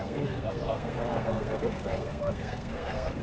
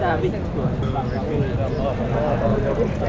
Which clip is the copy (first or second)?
first